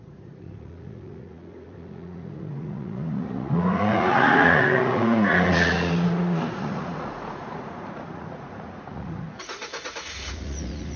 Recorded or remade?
remade